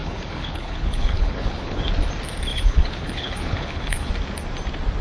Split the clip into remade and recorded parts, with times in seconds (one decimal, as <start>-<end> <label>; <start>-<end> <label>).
0.0-1.8 remade; 1.8-2.5 recorded; 2.5-4.1 remade; 4.1-5.0 recorded